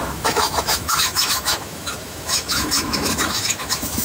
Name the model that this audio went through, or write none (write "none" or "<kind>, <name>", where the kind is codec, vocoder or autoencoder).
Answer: autoencoder, DAC-VAE